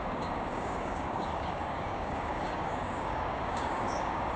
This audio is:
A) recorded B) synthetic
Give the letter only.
B